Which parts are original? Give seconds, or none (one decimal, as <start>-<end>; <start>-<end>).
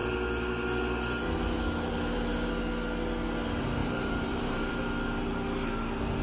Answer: 0.0-3.8; 4.7-6.2